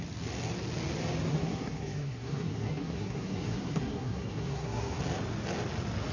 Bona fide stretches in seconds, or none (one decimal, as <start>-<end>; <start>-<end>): 0.0-1.3; 5.0-6.1